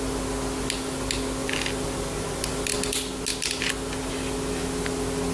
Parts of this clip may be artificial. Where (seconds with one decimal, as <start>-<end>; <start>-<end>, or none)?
none